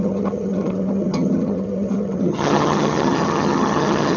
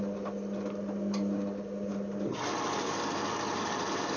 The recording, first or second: second